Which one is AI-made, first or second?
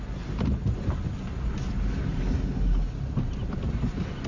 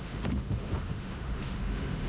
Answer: second